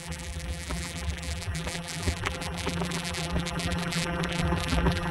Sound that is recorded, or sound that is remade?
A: remade